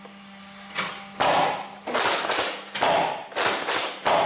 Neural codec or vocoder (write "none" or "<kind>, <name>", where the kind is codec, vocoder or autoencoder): none